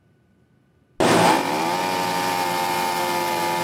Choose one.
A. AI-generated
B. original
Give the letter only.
B